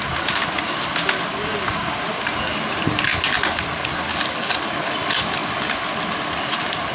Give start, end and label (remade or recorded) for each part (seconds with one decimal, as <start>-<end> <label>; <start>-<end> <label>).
0.0-1.3 recorded; 1.3-2.0 remade; 2.0-6.9 recorded